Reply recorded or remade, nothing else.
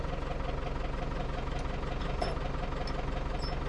recorded